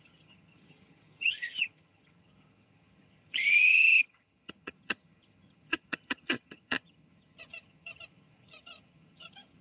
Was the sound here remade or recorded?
remade